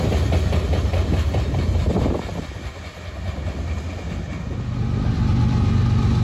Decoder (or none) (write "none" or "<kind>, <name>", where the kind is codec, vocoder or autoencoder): none